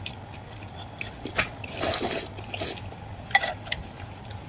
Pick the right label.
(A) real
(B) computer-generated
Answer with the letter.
A